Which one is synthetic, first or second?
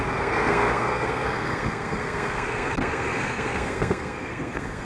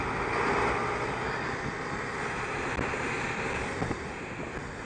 first